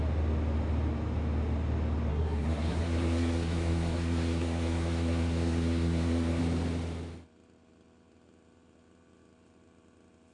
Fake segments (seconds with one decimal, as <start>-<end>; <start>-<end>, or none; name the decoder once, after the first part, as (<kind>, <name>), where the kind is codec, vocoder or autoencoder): 2.1-6.4 (codec, SNAC)